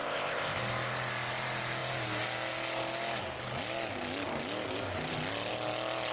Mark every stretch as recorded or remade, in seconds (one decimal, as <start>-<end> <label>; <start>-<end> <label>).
0.0-0.6 remade; 0.6-6.1 recorded